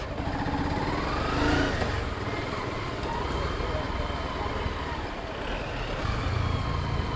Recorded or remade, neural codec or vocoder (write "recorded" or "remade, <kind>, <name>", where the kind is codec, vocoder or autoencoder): recorded